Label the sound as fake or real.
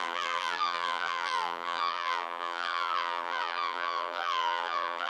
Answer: fake